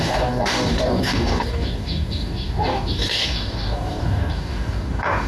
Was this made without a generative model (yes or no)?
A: no